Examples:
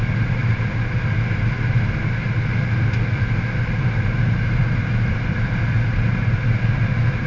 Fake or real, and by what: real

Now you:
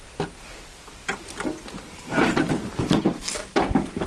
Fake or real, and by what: real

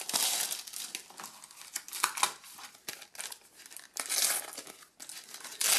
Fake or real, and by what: real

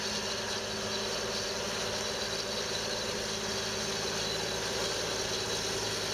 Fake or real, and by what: real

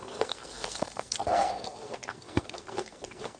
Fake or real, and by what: fake, codec, SNAC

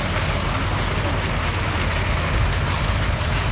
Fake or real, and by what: real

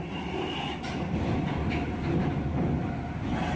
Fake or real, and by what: real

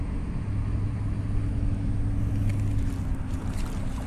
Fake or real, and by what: real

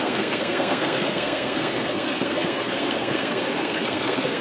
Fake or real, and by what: fake, codec, SNAC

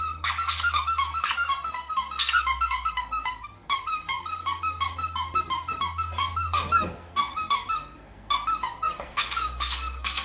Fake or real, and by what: fake, codec, SNAC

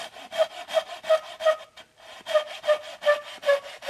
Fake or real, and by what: real